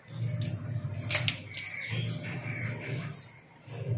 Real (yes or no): yes